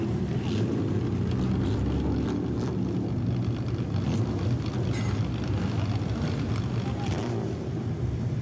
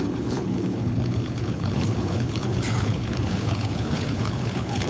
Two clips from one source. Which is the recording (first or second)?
first